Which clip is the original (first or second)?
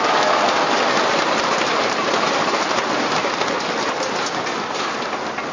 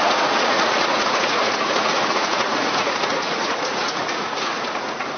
first